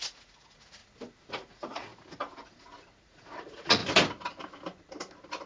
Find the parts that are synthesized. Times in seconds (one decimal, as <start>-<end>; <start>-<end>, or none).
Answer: 0.0-0.8; 1.3-1.9; 3.0-3.8